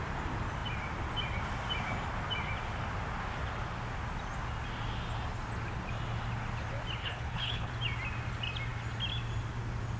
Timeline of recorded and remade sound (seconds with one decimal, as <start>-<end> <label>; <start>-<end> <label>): 0.0-7.0 recorded; 7.0-7.7 remade; 7.7-10.0 recorded

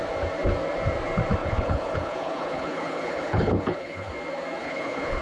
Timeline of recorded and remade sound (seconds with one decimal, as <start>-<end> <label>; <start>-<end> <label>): 0.0-1.4 recorded; 1.4-4.1 remade; 4.1-4.6 recorded; 4.6-5.2 remade

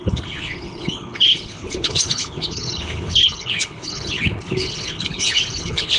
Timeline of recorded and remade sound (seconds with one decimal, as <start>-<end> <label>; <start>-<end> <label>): 0.0-6.0 remade

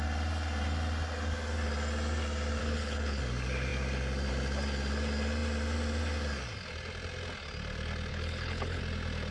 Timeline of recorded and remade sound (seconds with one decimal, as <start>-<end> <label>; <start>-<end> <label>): 0.0-2.6 recorded; 2.6-3.2 remade; 3.2-8.1 recorded; 8.1-8.8 remade; 8.8-9.3 recorded

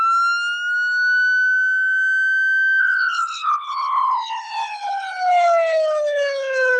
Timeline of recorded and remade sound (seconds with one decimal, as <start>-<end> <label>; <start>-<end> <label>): 0.0-2.8 recorded; 2.8-6.8 remade